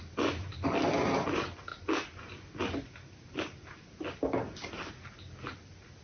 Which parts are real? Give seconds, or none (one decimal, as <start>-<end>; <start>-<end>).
0.0-6.0